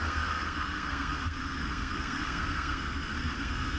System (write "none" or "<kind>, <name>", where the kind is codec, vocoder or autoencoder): codec, SNAC